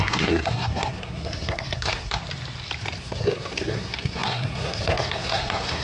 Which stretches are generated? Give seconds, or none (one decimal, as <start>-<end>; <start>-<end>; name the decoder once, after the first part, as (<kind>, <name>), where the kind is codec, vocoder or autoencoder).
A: 0.0-2.2 (codec, SNAC); 3.0-5.8